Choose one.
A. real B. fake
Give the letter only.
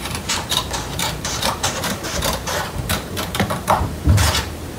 B